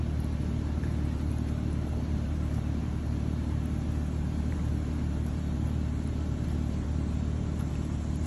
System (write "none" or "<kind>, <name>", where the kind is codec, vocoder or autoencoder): vocoder, BigVGAN v2